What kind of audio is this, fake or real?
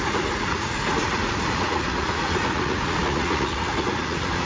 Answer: fake